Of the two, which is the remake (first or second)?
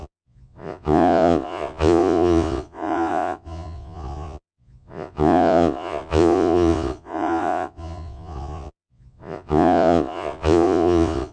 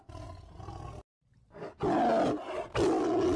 first